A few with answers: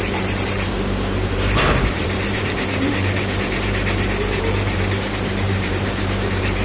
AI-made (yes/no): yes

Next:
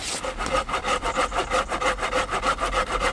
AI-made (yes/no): no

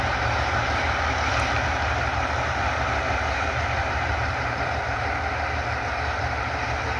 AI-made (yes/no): yes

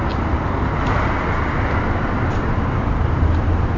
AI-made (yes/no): yes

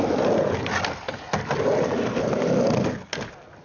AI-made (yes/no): no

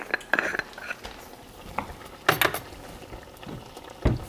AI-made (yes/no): no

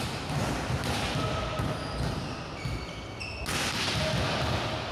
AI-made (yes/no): no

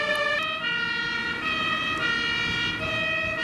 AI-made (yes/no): no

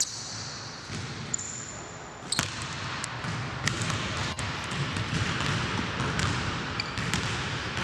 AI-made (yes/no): no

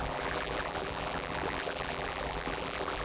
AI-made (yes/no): yes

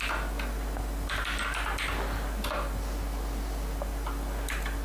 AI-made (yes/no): no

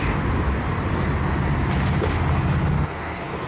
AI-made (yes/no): no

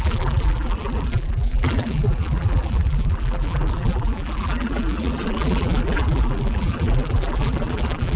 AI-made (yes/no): yes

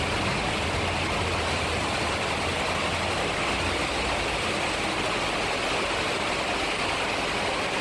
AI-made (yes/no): no